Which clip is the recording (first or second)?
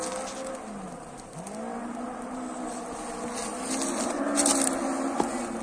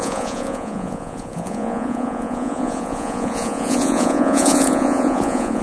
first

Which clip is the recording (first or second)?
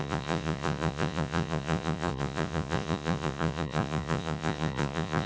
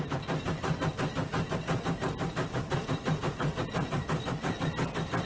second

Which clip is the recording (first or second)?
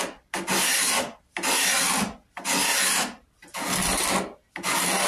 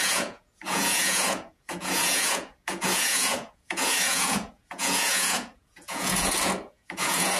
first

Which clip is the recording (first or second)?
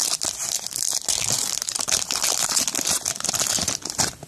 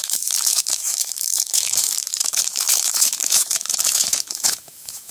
first